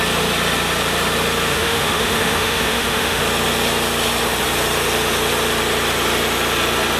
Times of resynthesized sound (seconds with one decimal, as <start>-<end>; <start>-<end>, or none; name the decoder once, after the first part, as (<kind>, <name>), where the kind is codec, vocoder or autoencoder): 1.5-3.2 (autoencoder, DAC-VAE)